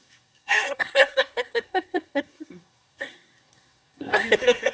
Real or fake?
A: fake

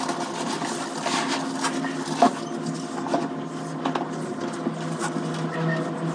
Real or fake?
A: real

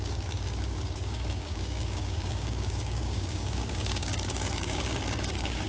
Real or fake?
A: fake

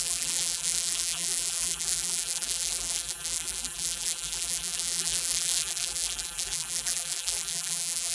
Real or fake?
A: fake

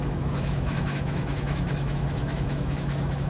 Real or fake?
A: fake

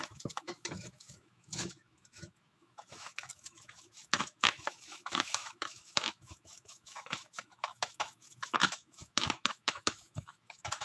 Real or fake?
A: fake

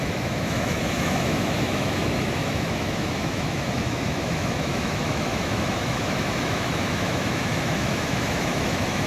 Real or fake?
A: fake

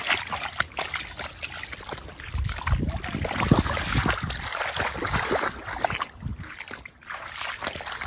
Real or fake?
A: real